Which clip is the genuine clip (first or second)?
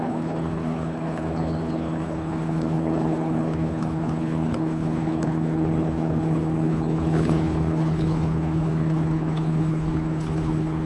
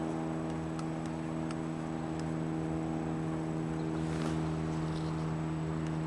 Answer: second